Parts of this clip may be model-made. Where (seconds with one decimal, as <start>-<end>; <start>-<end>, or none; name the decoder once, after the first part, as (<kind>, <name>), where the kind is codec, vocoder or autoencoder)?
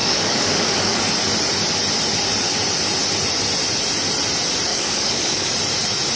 0.0-1.0 (codec, DAC); 4.7-5.5